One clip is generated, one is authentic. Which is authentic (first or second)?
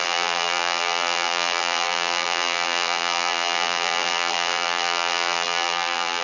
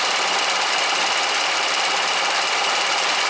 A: second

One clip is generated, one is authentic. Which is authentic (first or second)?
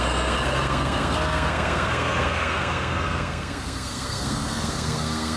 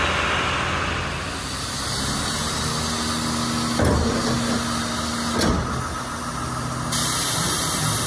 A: second